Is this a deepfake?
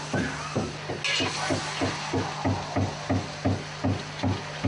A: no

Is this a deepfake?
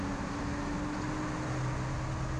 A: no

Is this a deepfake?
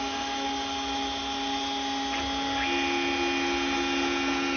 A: no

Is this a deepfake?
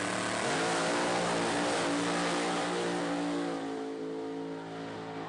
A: no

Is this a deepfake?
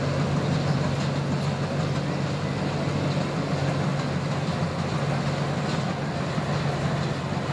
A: no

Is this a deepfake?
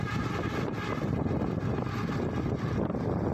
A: no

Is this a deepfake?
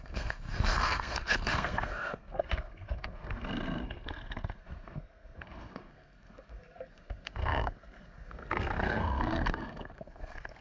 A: yes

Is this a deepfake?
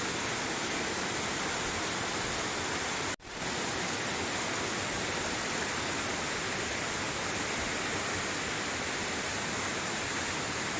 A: no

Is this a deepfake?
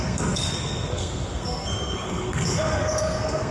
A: yes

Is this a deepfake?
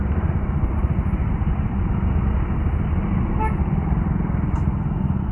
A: no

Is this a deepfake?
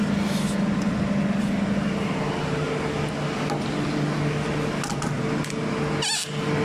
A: no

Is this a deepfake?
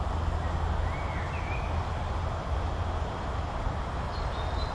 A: no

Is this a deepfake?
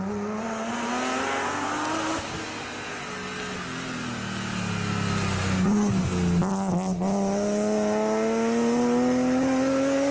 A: no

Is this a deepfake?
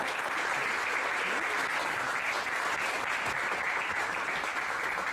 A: no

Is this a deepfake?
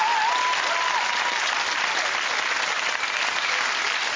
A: no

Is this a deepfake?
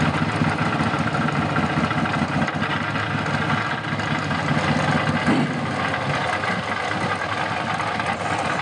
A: no